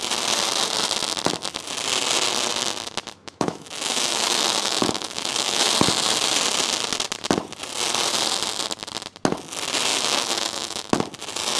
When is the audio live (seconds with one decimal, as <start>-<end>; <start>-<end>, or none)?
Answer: 0.0-3.2; 5.7-9.9; 10.9-11.6